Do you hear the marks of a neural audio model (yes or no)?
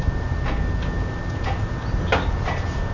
no